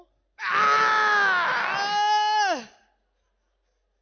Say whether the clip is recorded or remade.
recorded